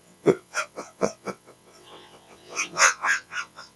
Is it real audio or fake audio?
fake